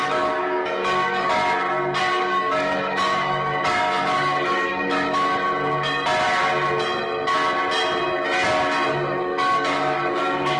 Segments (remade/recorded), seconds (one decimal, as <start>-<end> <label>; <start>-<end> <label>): 0.0-1.4 remade; 1.4-2.0 recorded; 2.0-5.3 remade; 5.3-8.9 recorded; 8.9-10.6 remade